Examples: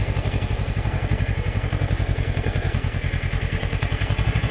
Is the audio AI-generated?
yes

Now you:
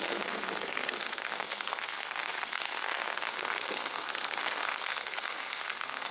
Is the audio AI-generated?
yes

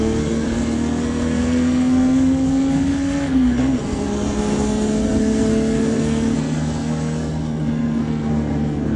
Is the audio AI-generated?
yes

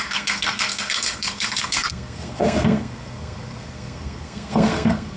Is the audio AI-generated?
yes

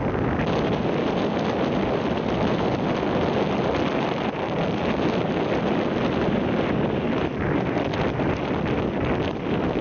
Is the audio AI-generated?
no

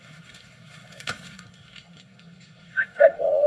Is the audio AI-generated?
yes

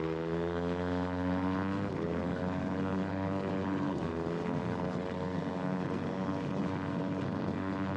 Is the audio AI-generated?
yes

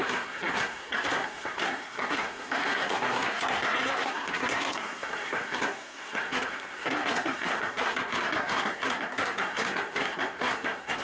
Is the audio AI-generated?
yes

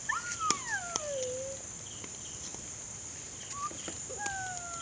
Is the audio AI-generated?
no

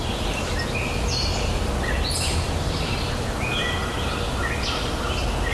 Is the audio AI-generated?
no